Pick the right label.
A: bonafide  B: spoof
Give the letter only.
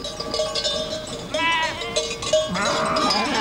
A